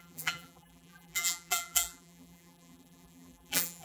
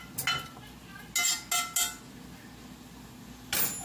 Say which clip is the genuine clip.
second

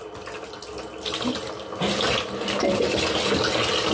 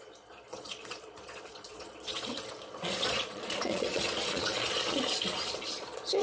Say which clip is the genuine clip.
first